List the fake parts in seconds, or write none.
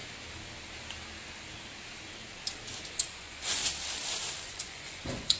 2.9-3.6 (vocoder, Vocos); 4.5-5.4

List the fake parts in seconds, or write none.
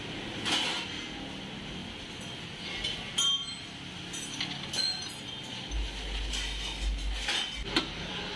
none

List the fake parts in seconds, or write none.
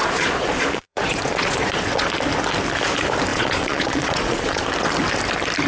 0.0-2.1 (vocoder, Vocos); 3.3-4.7